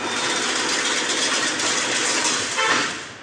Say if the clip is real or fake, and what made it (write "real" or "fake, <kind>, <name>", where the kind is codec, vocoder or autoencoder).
real